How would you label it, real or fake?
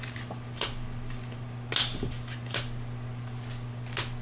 real